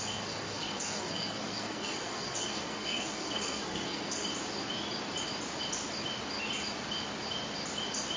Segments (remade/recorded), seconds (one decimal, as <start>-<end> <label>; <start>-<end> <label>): 0.0-4.2 remade; 4.2-8.2 recorded